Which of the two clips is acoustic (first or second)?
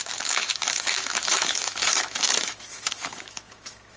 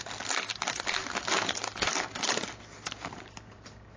second